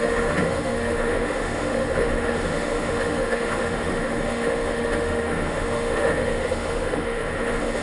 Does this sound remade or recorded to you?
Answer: remade